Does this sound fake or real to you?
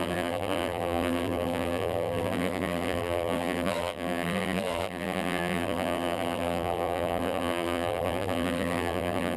fake